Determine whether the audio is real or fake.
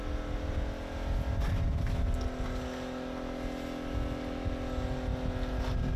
real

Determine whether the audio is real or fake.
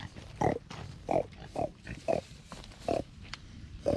fake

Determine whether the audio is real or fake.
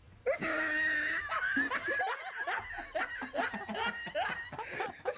real